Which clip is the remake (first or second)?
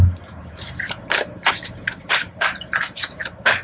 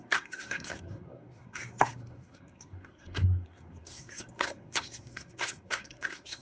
second